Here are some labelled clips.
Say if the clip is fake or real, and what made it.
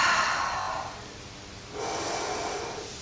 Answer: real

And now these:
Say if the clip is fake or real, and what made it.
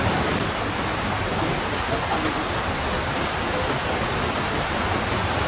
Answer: fake, vocoder, BigVGAN v2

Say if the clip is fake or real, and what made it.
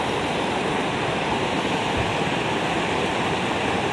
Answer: real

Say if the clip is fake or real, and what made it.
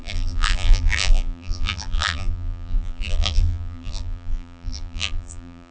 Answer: fake, vocoder, BigVGAN v2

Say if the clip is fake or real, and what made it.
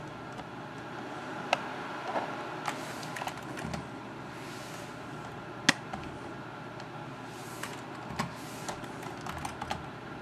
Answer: real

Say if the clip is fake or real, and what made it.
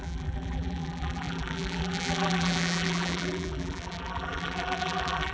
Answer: fake, vocoder, BigVGAN v2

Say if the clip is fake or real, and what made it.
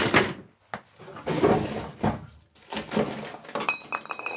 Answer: real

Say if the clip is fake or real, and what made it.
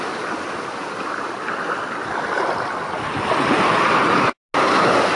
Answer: real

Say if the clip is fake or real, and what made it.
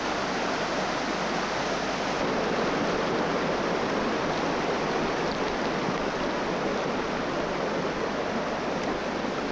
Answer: real